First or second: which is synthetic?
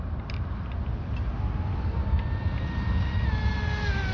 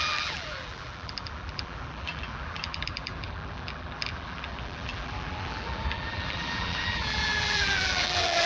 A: second